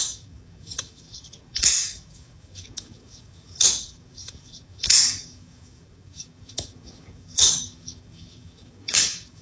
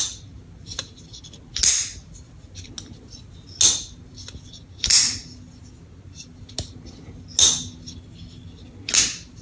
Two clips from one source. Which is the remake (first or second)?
first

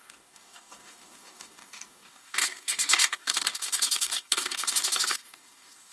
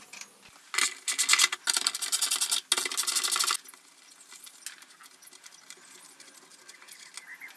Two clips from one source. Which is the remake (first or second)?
first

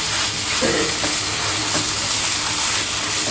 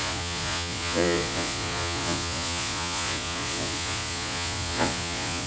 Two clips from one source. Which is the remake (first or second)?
second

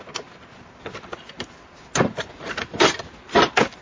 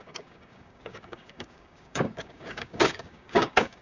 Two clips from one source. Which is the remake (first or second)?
second